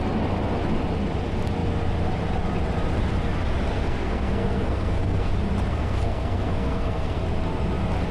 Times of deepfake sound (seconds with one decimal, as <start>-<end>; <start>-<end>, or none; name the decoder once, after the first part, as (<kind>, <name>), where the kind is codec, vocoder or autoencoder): 3.7-5.3 (codec, SNAC); 5.7-7.2